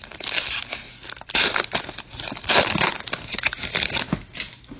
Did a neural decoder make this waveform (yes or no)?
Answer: no